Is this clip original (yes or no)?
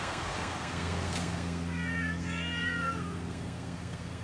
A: no